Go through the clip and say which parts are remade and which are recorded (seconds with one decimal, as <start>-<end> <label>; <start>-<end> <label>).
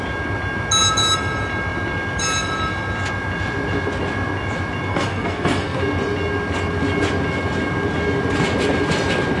0.0-4.9 recorded; 4.9-5.8 remade; 5.8-9.4 recorded